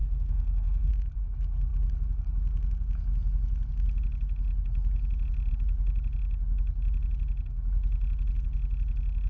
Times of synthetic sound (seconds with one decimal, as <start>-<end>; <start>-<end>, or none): 0.0-0.9